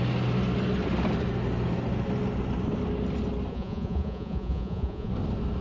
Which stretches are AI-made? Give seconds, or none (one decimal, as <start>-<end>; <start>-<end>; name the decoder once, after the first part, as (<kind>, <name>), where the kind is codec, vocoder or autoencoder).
3.5-5.1 (vocoder, Vocos)